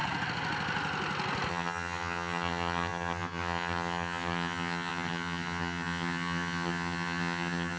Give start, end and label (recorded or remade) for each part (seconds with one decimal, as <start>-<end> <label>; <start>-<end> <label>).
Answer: 0.0-1.5 recorded; 1.5-7.8 remade